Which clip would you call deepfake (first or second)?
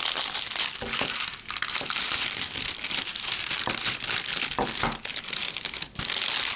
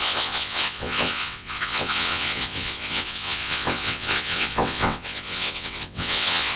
second